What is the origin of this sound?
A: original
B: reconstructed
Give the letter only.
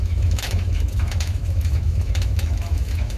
B